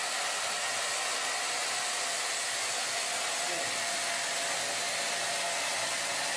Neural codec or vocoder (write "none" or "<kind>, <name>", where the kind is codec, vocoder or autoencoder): none